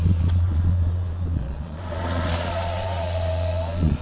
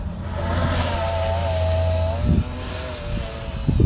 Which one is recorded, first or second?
second